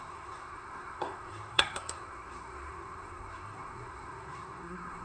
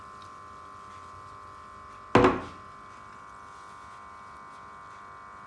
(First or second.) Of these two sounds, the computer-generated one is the first